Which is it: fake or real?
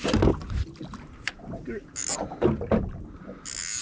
real